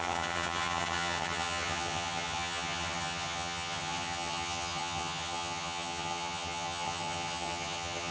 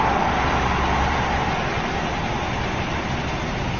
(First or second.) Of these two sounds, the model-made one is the first